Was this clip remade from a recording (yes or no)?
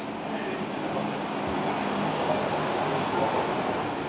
no